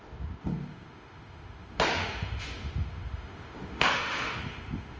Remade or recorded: remade